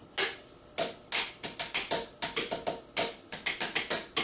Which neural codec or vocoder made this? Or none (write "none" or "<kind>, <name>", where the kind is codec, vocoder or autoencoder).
none